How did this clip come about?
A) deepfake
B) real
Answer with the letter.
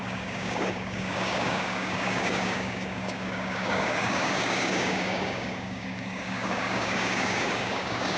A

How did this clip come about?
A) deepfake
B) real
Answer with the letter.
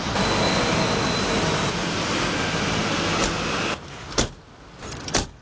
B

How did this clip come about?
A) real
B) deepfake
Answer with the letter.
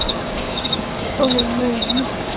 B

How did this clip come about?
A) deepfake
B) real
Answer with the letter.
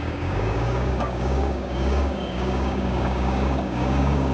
A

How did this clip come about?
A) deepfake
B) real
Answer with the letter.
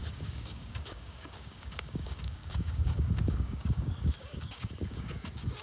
A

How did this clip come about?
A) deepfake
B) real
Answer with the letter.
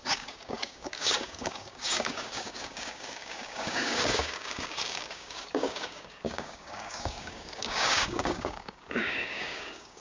A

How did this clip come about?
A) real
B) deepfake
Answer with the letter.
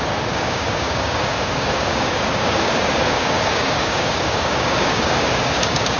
B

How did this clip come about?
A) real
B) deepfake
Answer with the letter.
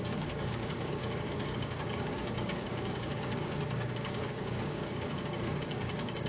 B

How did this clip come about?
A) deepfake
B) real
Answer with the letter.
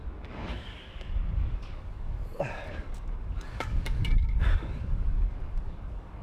A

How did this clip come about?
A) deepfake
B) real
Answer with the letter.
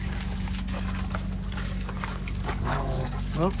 A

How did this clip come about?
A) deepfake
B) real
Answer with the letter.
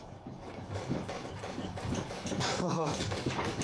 A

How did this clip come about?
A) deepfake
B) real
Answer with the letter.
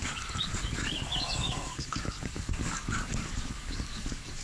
A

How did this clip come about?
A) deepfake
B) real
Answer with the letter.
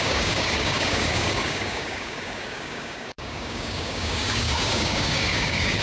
A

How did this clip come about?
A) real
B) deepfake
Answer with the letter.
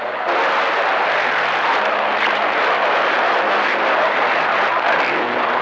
A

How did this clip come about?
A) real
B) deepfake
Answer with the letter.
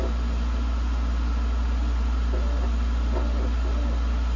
A